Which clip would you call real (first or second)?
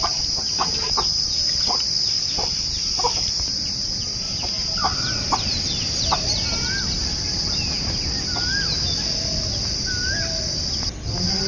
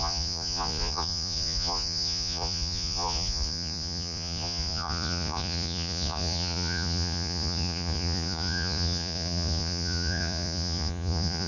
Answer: first